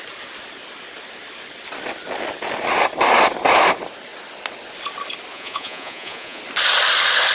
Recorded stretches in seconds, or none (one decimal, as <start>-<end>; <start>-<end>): 0.0-5.3; 6.4-7.3